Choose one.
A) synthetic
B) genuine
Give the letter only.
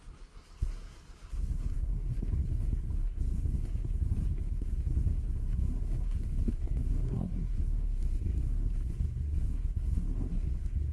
A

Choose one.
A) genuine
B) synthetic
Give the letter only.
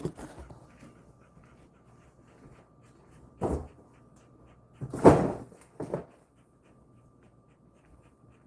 A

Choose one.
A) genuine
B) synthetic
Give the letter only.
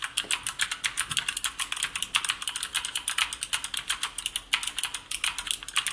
A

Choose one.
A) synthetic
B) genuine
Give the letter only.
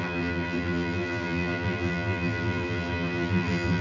A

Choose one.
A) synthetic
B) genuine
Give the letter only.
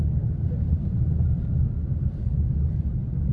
B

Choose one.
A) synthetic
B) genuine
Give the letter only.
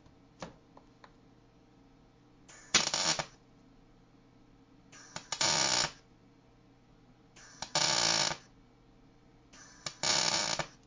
B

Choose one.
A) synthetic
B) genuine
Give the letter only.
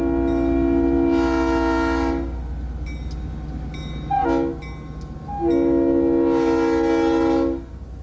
B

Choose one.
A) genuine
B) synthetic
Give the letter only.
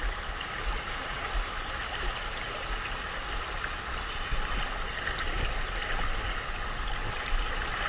A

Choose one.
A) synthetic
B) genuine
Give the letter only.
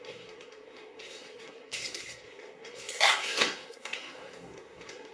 A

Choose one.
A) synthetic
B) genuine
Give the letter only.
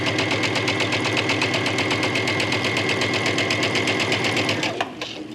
B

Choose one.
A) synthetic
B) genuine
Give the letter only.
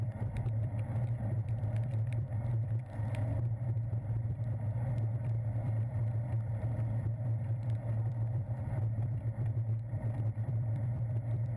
A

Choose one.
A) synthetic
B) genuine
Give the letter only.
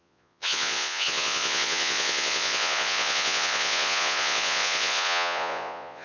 A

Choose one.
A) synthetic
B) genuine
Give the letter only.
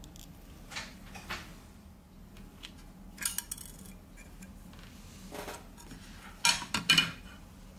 B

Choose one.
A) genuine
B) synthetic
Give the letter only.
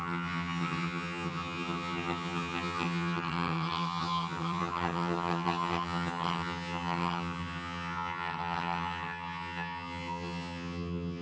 B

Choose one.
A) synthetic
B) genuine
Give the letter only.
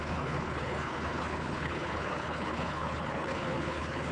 A